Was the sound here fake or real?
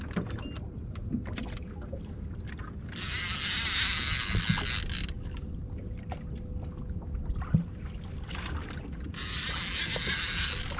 real